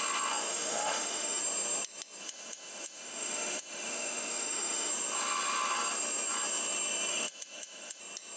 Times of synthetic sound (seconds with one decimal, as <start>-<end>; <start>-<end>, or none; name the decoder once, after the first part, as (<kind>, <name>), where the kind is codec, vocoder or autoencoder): 0.5-1.4 (autoencoder, DAC-VAE); 2.2-4.9; 7.1-8.0